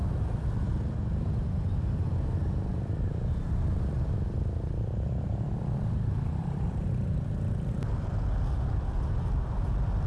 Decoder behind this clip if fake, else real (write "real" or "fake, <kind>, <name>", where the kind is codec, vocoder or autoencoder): fake, vocoder, BigVGAN v2